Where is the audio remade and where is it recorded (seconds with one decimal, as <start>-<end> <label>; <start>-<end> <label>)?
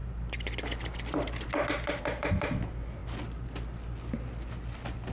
0.0-5.1 recorded